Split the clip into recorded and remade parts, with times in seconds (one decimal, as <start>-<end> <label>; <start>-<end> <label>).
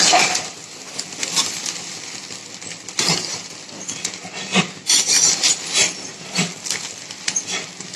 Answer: 0.0-8.0 remade